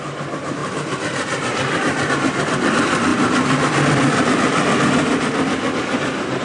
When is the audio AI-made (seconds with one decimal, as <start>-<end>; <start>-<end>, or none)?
0.6-2.1